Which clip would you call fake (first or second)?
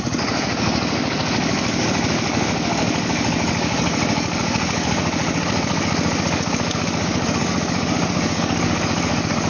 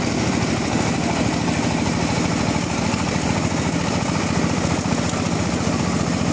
first